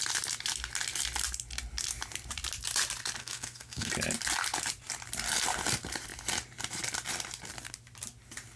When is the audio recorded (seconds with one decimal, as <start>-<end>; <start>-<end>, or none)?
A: 0.0-3.2; 3.9-8.6